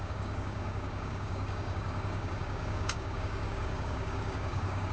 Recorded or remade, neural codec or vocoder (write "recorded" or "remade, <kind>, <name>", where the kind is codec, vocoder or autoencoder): remade, codec, DAC